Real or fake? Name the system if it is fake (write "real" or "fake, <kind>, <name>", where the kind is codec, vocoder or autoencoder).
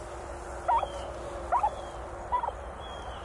real